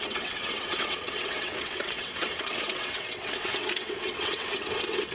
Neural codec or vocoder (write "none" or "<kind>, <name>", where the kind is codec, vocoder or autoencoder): vocoder, WaveNeXt